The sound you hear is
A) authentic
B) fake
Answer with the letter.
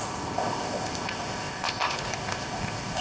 B